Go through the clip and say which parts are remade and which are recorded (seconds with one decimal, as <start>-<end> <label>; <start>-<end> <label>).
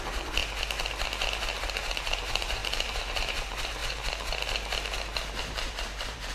0.0-0.4 remade; 0.4-1.6 recorded; 1.6-3.8 remade; 3.8-5.4 recorded; 5.4-6.3 remade